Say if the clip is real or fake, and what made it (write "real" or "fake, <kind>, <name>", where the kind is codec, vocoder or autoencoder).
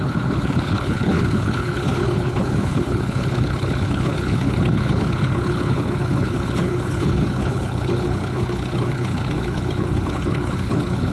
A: fake, codec, HILCodec